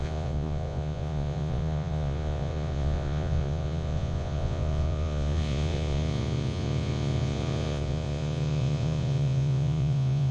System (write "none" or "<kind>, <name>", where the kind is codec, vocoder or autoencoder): vocoder, Vocos